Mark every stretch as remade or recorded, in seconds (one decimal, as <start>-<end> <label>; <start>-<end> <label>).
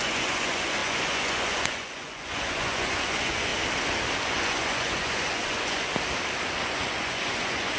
0.0-3.5 remade; 3.5-4.2 recorded; 4.2-5.9 remade; 5.9-6.6 recorded; 6.6-7.8 remade